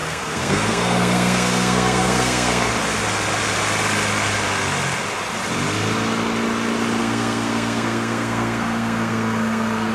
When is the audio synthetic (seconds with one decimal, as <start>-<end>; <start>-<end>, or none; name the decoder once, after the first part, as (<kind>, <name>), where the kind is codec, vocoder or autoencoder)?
0.0-2.7 (codec, SNAC); 7.0-9.9